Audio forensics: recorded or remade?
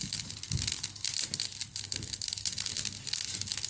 recorded